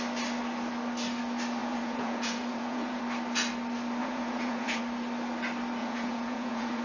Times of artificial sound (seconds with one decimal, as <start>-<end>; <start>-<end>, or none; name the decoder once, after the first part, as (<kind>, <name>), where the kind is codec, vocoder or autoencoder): 1.6-3.0 (vocoder, Vocos); 4.0-4.8; 5.8-6.8